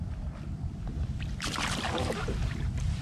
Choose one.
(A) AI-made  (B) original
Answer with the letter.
B